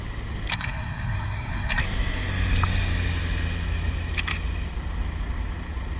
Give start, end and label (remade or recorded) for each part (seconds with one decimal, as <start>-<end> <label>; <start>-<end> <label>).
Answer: 0.0-0.5 recorded; 0.5-1.8 remade; 1.8-6.0 recorded